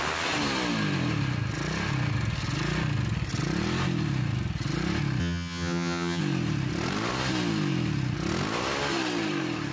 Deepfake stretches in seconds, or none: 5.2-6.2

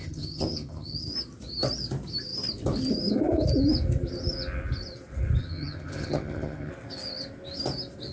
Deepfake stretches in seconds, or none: 0.0-1.1; 5.4-6.7

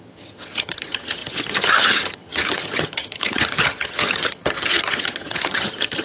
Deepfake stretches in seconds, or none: 0.0-6.0